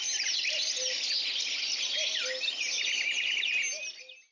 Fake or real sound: real